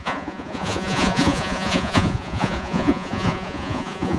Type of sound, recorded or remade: remade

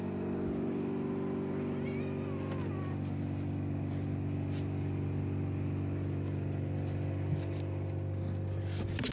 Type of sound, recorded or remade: recorded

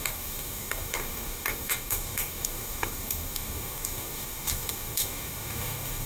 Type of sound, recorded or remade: remade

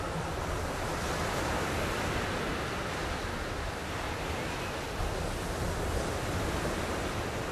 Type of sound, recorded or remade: recorded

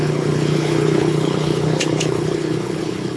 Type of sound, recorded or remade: remade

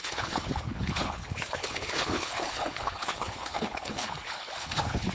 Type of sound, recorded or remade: remade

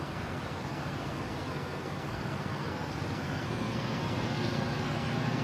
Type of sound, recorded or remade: remade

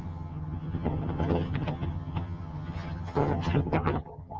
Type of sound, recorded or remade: remade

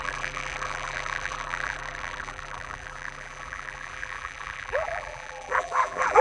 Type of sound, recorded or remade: remade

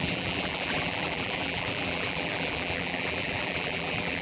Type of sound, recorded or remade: remade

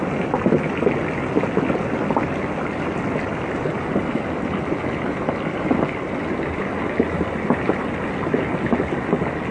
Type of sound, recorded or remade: recorded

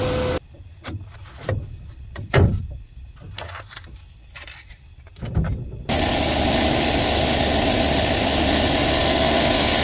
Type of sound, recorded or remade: recorded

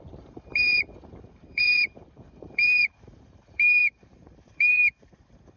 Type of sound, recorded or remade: remade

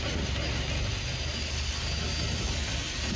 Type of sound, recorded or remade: recorded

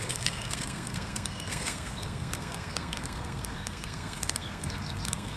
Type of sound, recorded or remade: remade